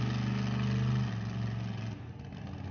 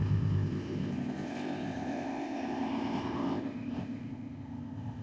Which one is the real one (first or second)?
first